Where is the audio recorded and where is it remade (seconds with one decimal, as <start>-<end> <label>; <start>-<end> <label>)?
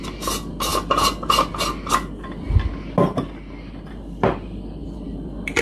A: 0.0-4.8 recorded; 4.8-5.6 remade